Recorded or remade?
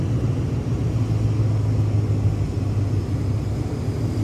recorded